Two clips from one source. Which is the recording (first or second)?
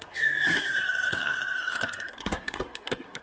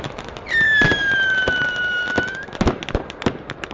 second